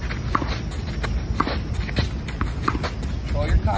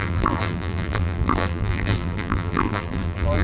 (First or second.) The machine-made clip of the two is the second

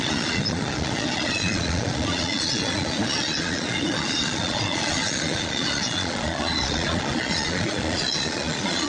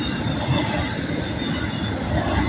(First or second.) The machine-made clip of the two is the first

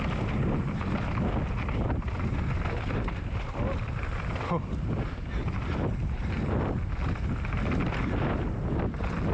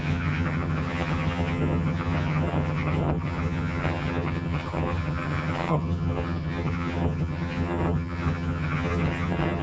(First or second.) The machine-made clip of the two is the second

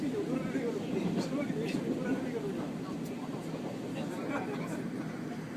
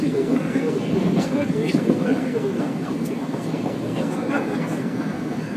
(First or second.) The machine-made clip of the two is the second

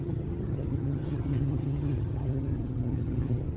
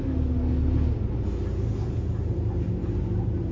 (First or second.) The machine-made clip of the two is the first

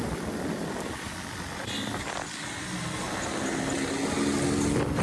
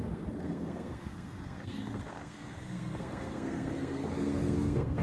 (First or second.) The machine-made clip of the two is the second